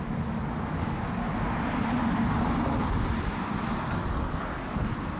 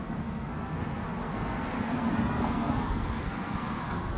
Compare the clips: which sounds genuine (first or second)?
first